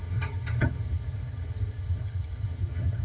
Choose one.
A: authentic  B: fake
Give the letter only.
B